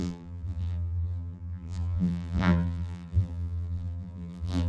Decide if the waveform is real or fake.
fake